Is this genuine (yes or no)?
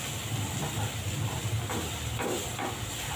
yes